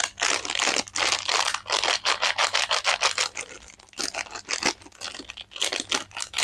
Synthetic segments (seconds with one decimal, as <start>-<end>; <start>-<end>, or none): none